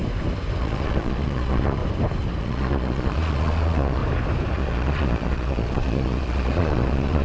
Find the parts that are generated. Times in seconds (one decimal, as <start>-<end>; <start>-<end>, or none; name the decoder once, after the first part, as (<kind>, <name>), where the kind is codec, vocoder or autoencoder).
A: 0.6-1.8 (vocoder, Vocos); 2.4-4.0; 4.5-7.2